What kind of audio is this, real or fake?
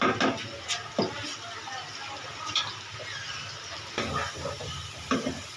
real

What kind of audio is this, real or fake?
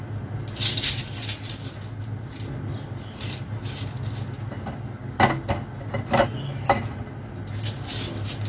real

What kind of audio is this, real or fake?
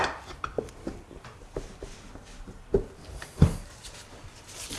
real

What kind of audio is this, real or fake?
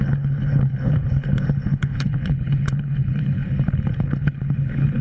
fake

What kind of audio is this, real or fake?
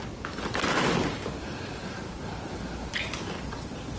fake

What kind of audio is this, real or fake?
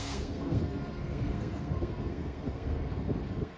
fake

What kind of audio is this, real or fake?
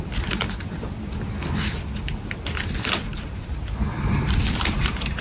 fake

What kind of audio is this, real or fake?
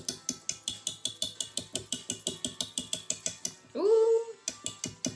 real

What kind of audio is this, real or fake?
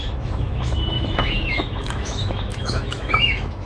fake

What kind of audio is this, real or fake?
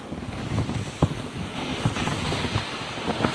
real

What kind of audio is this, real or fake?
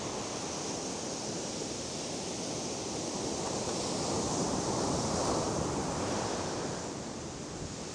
real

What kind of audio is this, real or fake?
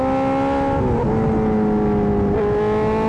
real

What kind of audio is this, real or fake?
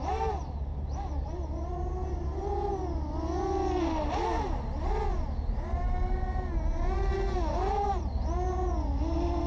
real